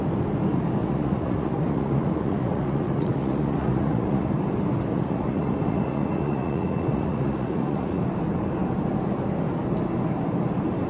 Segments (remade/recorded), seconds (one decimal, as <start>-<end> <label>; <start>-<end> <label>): 0.0-0.8 recorded; 0.8-4.3 remade; 4.3-4.9 recorded; 4.9-8.0 remade; 8.0-10.9 recorded